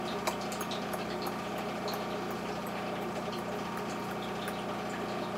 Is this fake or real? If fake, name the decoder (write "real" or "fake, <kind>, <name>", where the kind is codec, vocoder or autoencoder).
real